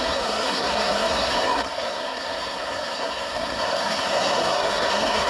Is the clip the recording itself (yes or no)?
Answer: no